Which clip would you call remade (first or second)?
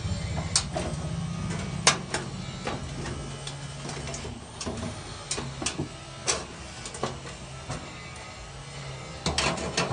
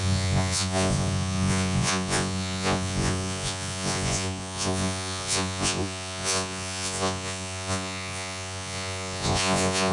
second